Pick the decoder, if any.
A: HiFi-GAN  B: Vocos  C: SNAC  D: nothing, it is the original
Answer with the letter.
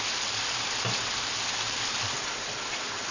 D